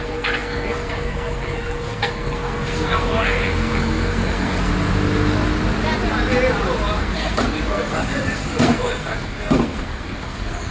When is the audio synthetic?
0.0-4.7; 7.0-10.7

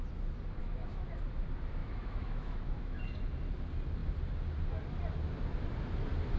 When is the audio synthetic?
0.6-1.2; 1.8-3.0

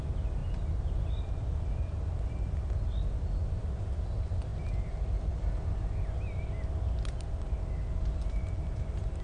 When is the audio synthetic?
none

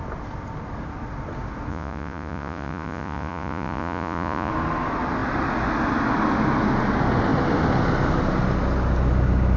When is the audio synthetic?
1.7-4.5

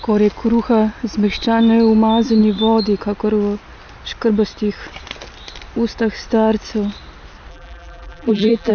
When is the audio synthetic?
7.5-8.7

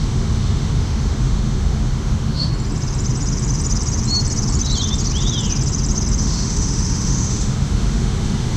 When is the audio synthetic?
0.0-2.5; 6.2-8.6